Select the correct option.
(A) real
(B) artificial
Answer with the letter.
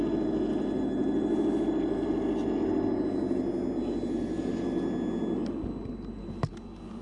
A